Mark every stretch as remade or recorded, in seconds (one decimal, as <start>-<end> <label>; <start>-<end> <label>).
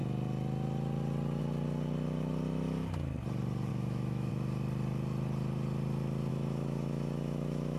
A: 0.0-3.7 recorded; 3.7-4.3 remade; 4.3-6.3 recorded; 6.3-7.8 remade